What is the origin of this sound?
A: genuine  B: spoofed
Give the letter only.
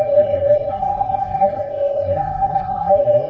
B